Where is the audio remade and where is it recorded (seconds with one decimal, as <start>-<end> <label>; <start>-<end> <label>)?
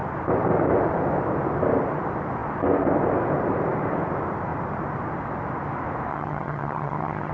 0.0-6.1 recorded; 6.1-7.3 remade